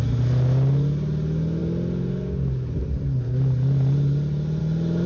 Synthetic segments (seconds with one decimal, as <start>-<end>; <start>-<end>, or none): none